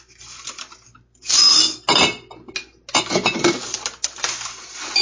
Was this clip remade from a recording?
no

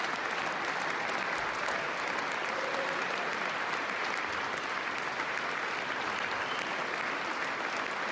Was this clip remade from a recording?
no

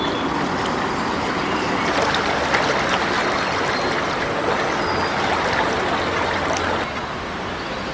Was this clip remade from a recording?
no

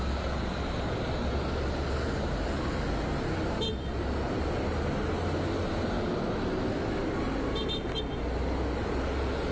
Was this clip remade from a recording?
no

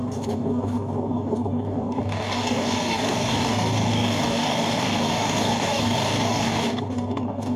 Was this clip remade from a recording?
yes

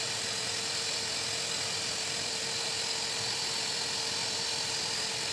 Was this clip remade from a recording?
yes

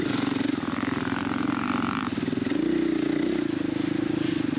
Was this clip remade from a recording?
no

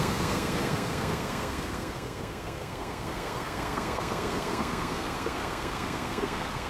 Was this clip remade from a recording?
yes